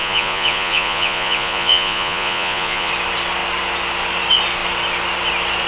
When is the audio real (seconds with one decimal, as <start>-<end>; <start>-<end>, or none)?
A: 2.9-5.7